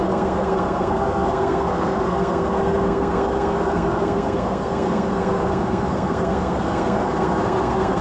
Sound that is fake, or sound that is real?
fake